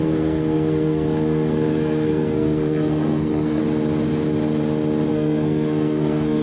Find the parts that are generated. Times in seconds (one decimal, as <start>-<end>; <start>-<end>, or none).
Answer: 0.0-3.6; 5.1-6.4